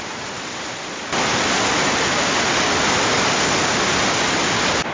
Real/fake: real